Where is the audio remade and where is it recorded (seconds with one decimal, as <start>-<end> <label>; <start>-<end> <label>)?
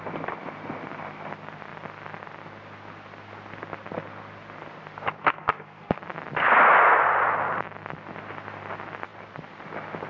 0.0-5.2 recorded; 5.2-6.0 remade; 6.0-10.1 recorded